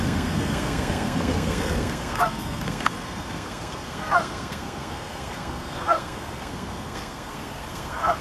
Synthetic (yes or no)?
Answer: yes